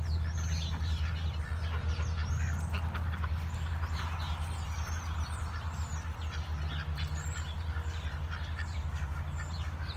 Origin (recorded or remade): recorded